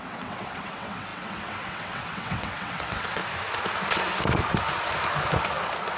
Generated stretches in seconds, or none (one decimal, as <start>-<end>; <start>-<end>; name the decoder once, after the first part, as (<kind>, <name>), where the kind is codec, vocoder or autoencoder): 0.0-3.2 (vocoder, WaveNeXt)